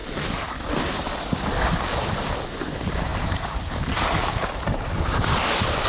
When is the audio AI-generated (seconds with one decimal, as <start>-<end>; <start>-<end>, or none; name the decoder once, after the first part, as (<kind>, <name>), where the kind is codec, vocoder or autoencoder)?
none